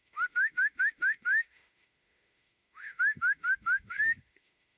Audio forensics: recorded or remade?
remade